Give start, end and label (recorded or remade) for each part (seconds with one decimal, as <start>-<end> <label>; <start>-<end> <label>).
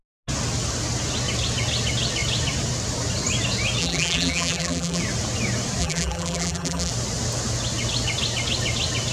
0.0-3.8 recorded; 3.8-5.0 remade; 5.0-5.8 recorded; 5.8-6.9 remade; 6.9-9.1 recorded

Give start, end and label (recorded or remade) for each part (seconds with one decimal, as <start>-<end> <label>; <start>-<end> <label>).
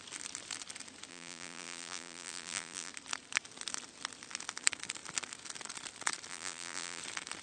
0.0-1.1 recorded; 1.1-2.9 remade; 2.9-6.3 recorded; 6.3-7.0 remade; 7.0-7.4 recorded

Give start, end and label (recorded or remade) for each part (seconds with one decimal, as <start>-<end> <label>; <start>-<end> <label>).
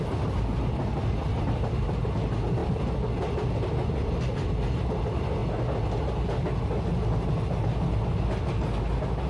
0.0-9.3 recorded